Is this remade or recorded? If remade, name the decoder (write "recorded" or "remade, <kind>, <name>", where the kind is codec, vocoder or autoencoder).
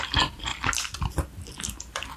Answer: recorded